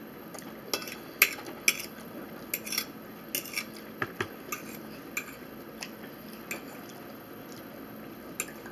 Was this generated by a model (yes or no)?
no